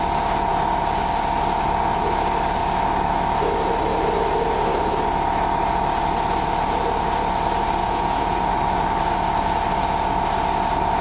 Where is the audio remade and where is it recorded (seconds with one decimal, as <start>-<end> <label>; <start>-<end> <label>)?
0.0-7.8 recorded; 7.8-8.5 remade; 8.5-11.0 recorded